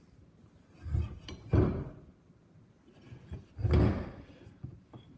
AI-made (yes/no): no